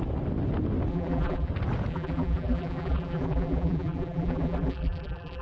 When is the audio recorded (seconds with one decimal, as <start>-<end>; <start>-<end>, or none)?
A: 0.0-0.9; 1.5-1.9